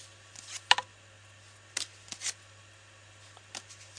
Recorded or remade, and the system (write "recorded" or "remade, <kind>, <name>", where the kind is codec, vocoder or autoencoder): recorded